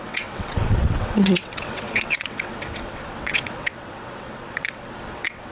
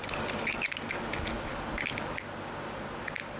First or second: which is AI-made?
first